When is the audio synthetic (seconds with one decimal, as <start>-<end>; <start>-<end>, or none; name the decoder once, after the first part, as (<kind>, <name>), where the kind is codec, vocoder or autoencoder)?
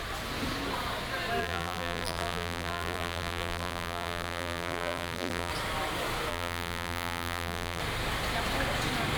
1.4-5.5 (vocoder, BigVGAN v2); 6.3-7.8